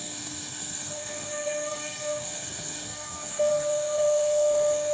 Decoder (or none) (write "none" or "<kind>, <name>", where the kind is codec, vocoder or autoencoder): codec, SNAC